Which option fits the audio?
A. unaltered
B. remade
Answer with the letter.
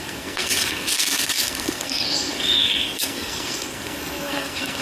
B